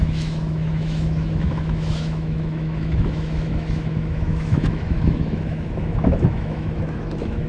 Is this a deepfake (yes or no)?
yes